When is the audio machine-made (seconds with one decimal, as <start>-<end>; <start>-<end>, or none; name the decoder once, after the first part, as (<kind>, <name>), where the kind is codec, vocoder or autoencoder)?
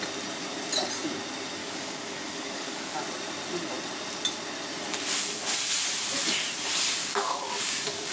1.6-3.0 (codec, DAC); 7.0-8.1